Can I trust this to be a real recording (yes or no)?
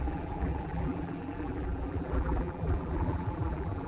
no